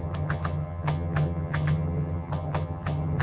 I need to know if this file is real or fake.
fake